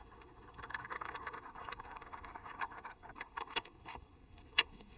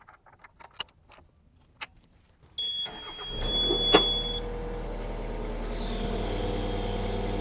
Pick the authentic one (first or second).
second